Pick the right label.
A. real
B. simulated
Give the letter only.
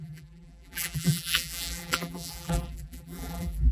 B